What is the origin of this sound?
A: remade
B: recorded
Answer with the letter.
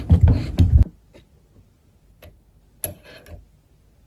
B